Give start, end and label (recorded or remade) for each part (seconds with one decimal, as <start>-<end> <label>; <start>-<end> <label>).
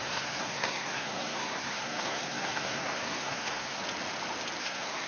0.0-3.8 remade; 3.8-4.6 recorded; 4.6-5.1 remade